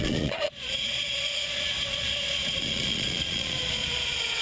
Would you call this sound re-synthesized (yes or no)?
yes